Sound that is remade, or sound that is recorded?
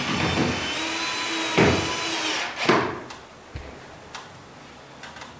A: recorded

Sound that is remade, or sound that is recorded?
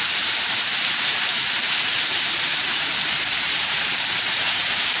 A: remade